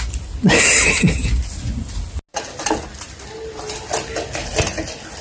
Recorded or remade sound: recorded